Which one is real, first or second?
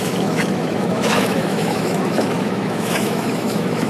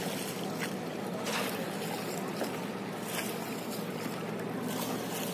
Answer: second